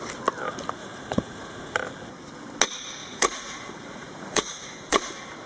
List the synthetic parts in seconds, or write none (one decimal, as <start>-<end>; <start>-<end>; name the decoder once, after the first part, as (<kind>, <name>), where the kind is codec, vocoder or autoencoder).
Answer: 0.8-1.8 (vocoder, Vocos); 3.0-5.1